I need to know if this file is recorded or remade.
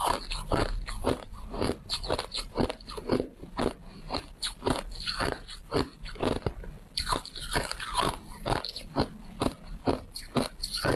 recorded